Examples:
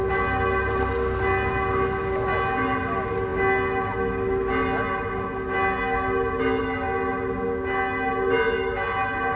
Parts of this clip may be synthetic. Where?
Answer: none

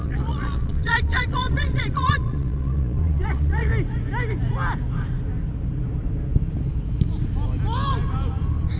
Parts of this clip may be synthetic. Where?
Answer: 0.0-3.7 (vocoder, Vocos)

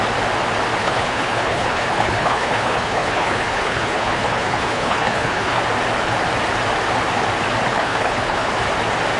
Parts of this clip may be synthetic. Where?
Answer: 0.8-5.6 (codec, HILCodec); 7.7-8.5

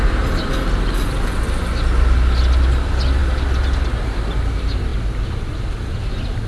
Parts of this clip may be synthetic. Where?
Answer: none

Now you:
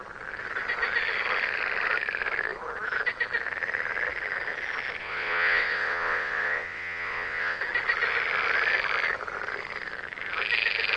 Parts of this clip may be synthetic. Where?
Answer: 5.0-7.6 (vocoder, WaveNeXt)